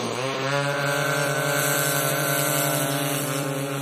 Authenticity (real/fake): real